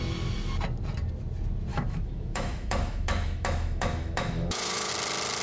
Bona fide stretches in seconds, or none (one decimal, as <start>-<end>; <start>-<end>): 0.0-1.7; 4.9-5.4